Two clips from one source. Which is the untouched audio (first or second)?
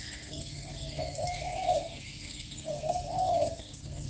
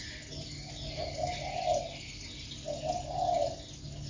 second